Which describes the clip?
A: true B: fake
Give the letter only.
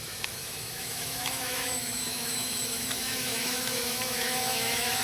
B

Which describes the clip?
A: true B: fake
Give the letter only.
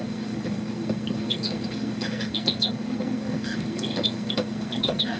B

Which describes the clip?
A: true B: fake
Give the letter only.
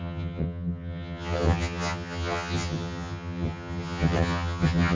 B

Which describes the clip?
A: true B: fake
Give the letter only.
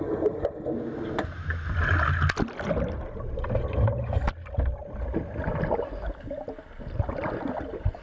A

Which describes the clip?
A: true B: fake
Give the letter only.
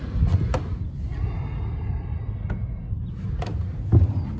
A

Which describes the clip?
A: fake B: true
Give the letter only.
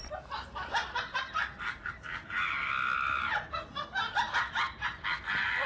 B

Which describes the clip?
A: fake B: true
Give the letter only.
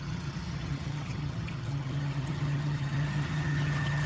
A